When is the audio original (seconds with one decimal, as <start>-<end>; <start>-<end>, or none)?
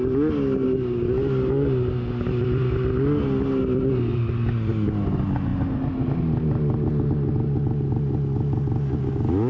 0.0-9.5